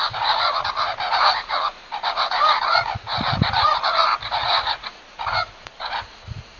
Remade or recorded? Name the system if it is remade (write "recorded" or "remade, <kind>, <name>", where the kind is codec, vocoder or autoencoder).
remade, vocoder, Vocos